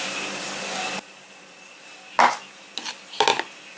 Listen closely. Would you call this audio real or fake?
real